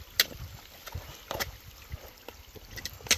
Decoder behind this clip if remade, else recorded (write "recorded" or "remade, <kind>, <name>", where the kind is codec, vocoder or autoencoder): recorded